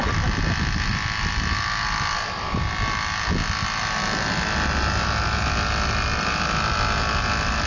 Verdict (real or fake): real